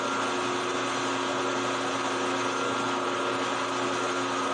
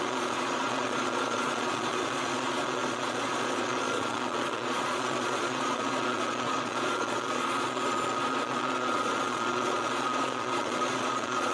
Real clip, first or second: first